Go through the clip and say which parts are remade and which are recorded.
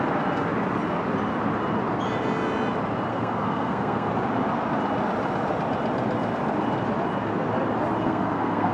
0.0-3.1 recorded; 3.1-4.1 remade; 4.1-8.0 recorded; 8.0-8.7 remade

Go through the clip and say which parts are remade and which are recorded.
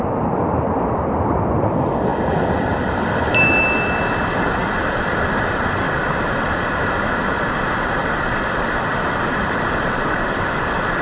0.0-11.0 recorded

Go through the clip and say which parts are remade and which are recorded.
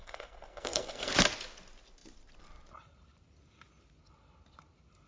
0.0-1.1 remade; 1.1-5.1 recorded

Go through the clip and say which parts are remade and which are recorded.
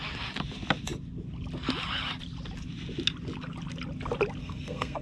0.0-4.4 recorded; 4.4-5.0 remade